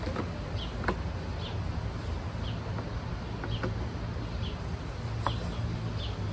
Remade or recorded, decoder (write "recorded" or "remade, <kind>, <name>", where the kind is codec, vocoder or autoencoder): recorded